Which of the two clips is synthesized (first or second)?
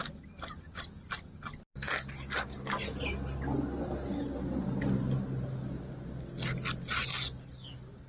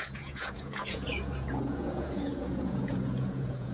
second